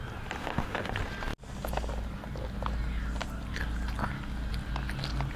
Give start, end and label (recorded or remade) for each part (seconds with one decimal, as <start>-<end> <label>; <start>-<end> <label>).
0.0-0.4 recorded; 0.4-0.9 remade; 0.9-5.4 recorded